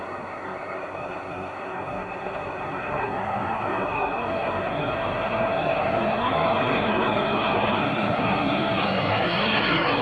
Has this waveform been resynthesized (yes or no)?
yes